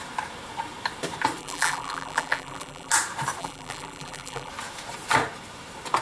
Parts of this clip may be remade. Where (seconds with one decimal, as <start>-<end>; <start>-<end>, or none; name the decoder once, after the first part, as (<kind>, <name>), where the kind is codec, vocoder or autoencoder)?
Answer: 1.4-2.9 (vocoder, BigVGAN v2); 3.4-4.5